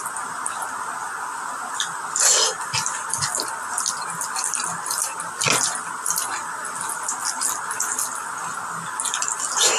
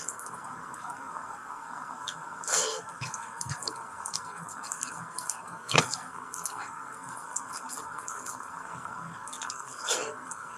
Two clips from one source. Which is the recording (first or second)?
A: first